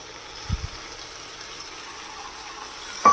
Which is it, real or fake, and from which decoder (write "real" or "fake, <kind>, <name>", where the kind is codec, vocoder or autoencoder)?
real